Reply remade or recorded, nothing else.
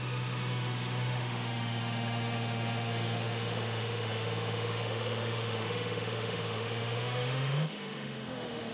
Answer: remade